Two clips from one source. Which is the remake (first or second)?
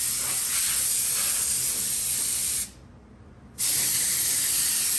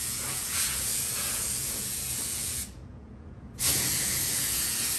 second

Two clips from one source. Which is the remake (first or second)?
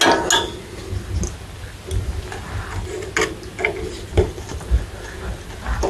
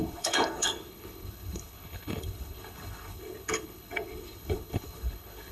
second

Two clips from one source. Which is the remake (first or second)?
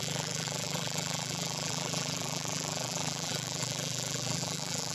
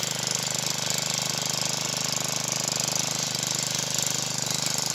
first